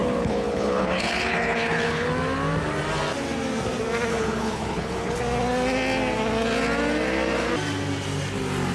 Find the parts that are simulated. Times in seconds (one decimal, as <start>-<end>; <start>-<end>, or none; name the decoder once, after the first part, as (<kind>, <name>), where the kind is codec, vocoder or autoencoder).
0.0-2.1 (codec, HILCodec); 4.1-5.2